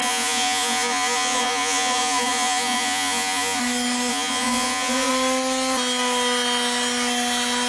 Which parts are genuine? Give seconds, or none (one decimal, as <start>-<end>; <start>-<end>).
3.6-4.1; 5.1-7.7